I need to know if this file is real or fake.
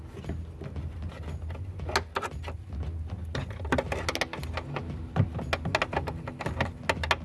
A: real